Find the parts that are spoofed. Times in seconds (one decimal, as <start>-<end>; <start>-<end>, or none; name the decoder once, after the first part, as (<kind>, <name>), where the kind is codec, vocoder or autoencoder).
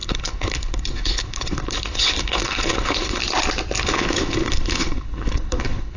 0.0-3.2 (codec, HILCodec); 3.8-6.0